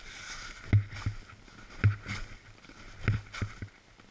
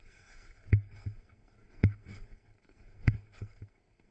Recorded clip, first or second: first